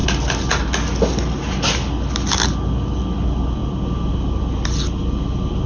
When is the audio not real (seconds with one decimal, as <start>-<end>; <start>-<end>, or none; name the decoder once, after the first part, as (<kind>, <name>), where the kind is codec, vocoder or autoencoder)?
none